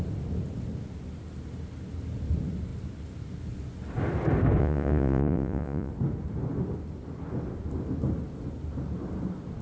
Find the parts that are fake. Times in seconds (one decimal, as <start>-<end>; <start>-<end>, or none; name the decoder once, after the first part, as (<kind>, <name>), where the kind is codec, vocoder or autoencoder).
4.6-5.9 (vocoder, Vocos)